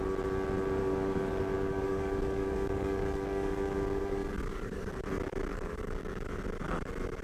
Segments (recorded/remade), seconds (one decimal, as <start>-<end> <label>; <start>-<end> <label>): 0.0-0.8 recorded; 0.8-4.9 remade; 4.9-5.5 recorded; 5.5-6.3 remade; 6.3-7.2 recorded